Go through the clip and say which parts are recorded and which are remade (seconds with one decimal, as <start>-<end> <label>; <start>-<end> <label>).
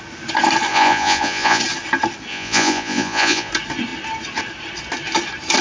0.0-0.7 recorded; 0.7-1.6 remade; 1.6-2.3 recorded; 2.3-3.5 remade; 3.5-5.6 recorded